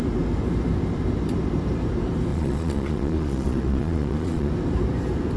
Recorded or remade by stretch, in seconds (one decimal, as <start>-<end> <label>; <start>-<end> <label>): 0.0-2.3 recorded; 2.3-4.5 remade; 4.5-5.4 recorded